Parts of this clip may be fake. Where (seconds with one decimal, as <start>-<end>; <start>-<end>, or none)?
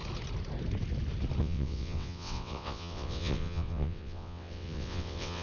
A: 1.4-5.4